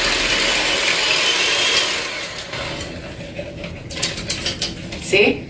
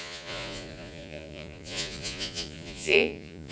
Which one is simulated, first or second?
second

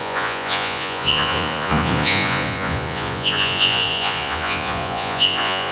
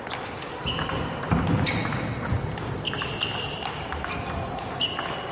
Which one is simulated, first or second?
first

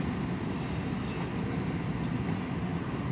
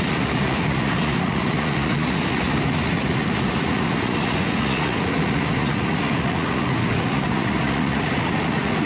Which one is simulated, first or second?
second